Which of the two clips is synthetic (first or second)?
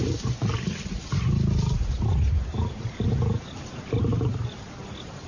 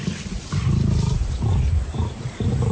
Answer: second